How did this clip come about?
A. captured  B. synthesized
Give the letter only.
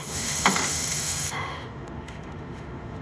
B